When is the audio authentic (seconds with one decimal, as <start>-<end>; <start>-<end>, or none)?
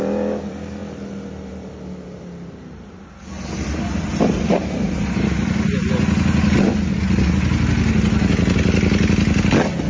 0.0-9.9